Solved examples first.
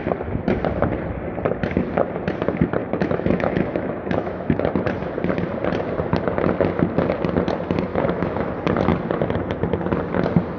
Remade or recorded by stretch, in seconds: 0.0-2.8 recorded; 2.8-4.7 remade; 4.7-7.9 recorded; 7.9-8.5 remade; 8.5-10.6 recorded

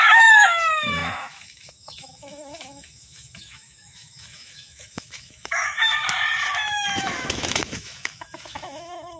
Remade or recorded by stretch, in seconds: 0.0-5.9 remade; 5.9-7.0 recorded; 7.0-9.2 remade

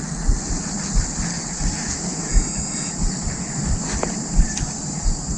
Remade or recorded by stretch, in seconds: 0.0-2.3 recorded; 2.3-2.9 remade; 2.9-5.4 recorded

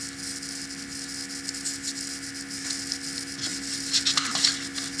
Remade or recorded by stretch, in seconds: 0.0-5.0 recorded

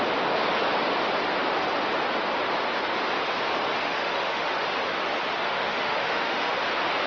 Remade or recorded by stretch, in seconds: 0.0-3.8 recorded; 3.8-4.5 remade; 4.5-5.4 recorded; 5.4-6.6 remade; 6.6-7.1 recorded

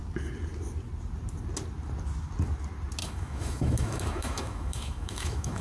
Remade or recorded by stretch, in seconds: 0.0-3.0 recorded; 3.0-5.6 remade

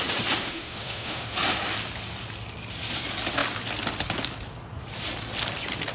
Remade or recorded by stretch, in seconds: 0.0-0.4 recorded; 0.4-1.3 remade; 1.3-5.9 recorded